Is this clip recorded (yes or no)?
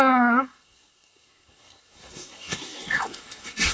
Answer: no